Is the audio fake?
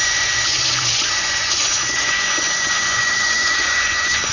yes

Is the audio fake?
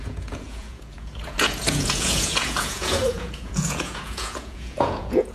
yes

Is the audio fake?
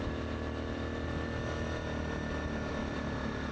no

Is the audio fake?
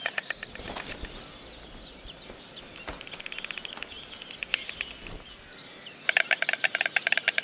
no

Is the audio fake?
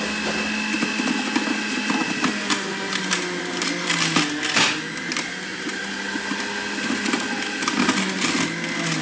no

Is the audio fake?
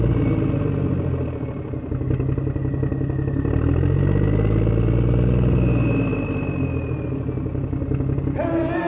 no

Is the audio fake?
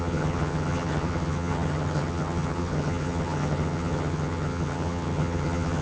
yes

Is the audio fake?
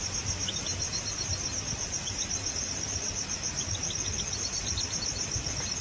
no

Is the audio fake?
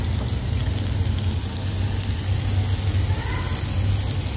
no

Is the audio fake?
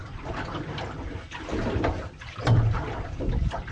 no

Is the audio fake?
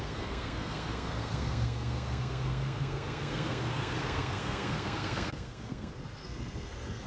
yes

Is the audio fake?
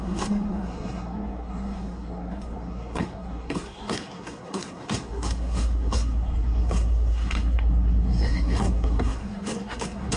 yes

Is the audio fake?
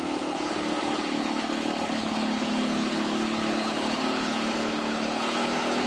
yes